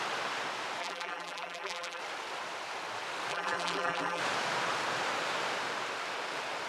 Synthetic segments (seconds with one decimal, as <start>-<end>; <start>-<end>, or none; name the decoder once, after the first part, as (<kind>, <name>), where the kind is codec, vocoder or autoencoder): 0.8-2.0 (vocoder, BigVGAN v2); 3.3-4.2